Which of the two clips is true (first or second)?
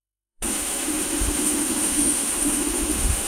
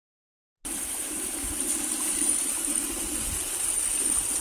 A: second